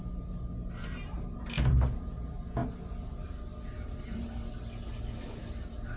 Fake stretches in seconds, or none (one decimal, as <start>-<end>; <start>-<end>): none